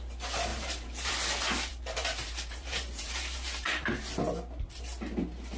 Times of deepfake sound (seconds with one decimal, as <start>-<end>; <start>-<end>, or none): 0.5-1.1; 1.7-3.9